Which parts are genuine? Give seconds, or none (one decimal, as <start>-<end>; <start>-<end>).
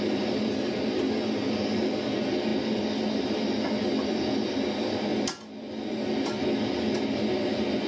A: 0.0-7.9